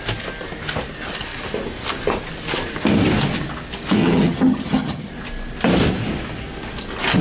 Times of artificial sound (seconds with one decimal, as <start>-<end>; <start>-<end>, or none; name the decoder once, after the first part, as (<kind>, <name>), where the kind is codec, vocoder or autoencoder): 4.0-5.1 (vocoder, HiFi-GAN)